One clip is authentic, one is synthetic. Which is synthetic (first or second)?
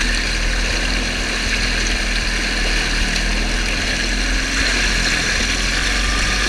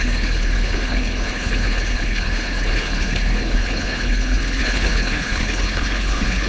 second